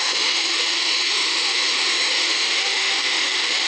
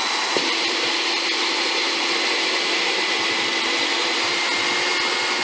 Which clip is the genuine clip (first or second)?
second